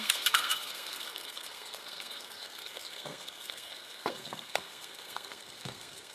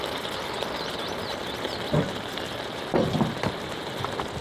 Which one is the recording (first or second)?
second